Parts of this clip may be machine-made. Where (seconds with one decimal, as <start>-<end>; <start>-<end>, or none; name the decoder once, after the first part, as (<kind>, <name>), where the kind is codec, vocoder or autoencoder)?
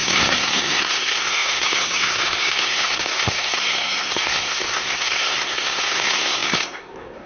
0.0-7.3 (codec, SNAC)